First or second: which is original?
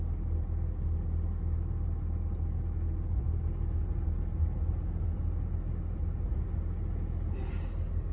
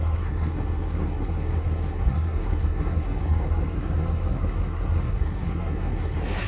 first